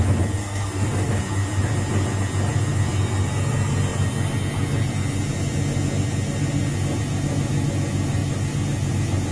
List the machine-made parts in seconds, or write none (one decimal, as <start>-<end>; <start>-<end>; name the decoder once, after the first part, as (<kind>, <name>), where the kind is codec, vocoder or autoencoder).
0.4-1.2 (codec, SNAC)